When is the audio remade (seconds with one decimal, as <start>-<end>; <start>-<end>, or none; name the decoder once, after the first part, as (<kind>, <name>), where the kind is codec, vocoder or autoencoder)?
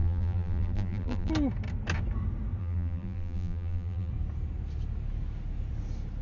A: 0.0-1.3 (vocoder, BigVGAN v2); 2.6-4.1